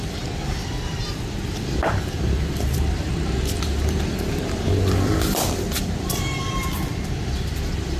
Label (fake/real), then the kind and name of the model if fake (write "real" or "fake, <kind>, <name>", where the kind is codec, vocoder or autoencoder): fake, vocoder, BigVGAN v2